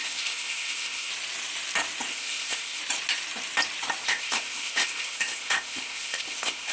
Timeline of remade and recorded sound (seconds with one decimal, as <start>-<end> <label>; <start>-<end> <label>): 0.0-1.1 remade; 1.1-2.1 recorded; 2.1-2.8 remade; 2.8-4.0 recorded; 4.0-6.7 remade